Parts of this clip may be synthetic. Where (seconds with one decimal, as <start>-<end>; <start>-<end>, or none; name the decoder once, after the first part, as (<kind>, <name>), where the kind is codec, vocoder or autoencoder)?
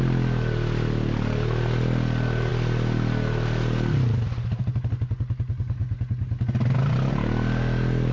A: none